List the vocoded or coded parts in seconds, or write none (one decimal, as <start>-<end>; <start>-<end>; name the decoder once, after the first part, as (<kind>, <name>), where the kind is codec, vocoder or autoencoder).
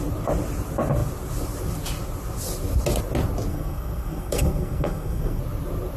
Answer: 3.5-5.4 (codec, SNAC)